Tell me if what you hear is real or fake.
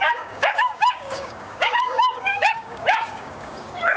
fake